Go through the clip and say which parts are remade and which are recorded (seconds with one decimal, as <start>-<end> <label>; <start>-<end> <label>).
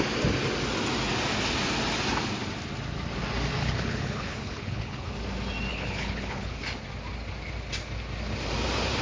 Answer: 0.0-3.6 recorded; 3.6-5.1 remade; 5.1-5.7 recorded; 5.7-6.6 remade; 6.6-9.0 recorded